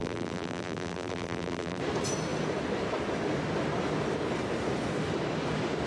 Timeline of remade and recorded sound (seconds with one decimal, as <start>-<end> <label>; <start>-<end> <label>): 0.0-1.8 remade; 1.8-5.9 recorded